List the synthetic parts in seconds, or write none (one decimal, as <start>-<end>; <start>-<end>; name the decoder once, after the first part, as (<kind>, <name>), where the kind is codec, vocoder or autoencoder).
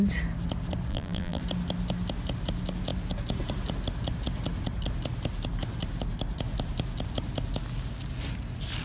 0.9-1.4 (vocoder, BigVGAN v2)